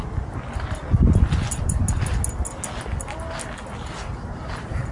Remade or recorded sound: recorded